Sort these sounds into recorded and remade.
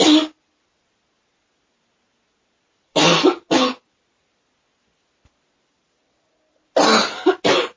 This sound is recorded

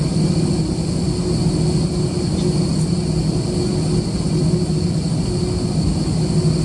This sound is recorded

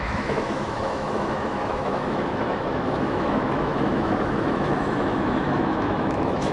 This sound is remade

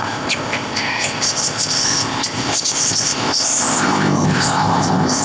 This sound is remade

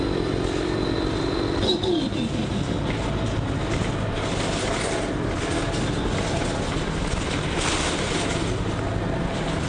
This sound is recorded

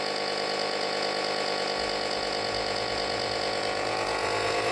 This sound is remade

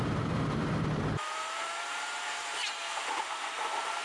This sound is remade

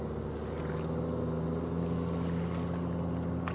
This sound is recorded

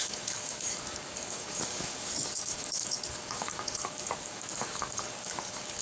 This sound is remade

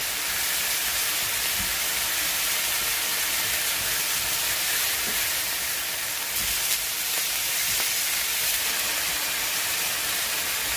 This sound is recorded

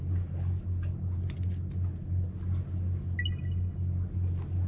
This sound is recorded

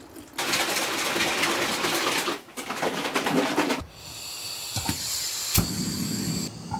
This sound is recorded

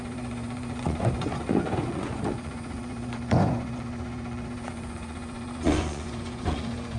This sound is remade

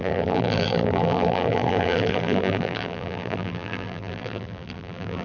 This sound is remade